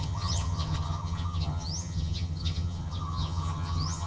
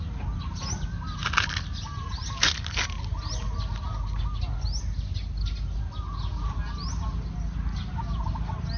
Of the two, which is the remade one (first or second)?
first